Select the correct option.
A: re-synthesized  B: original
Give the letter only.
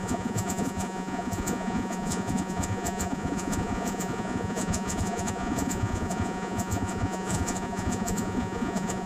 A